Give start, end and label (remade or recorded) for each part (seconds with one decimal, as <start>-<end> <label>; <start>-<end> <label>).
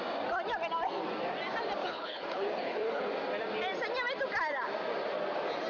0.0-1.8 recorded; 1.8-3.1 remade; 3.1-5.7 recorded